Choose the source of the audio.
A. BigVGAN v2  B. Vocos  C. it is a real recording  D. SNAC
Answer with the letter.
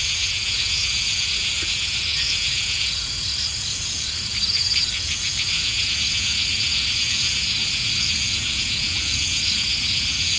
B